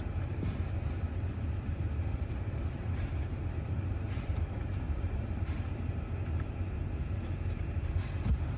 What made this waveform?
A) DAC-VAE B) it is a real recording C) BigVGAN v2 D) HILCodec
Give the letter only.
C